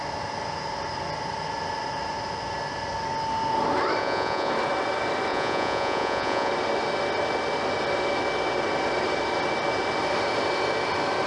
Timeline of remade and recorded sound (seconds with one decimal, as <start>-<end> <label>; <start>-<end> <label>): 0.0-4.0 recorded; 4.0-4.5 remade; 4.5-5.3 recorded; 5.3-6.5 remade; 6.5-11.3 recorded